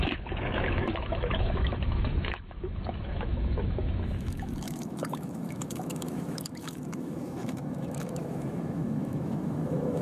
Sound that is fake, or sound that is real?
fake